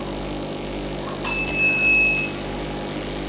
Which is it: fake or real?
real